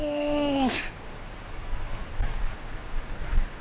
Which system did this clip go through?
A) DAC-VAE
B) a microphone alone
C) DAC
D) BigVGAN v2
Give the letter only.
B